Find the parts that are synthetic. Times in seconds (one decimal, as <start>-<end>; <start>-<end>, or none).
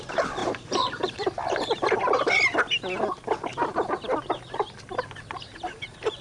0.4-2.0; 5.5-6.2